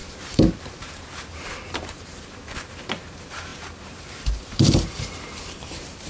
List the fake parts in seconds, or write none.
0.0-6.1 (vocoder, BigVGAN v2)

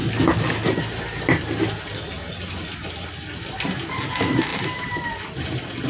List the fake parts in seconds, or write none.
none